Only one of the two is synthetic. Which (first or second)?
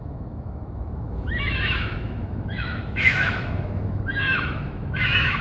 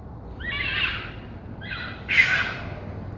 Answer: first